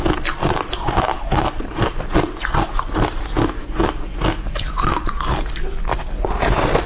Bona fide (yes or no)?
yes